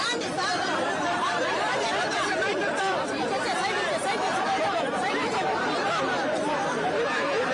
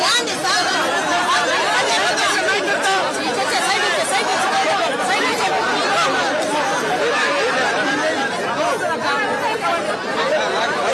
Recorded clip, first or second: second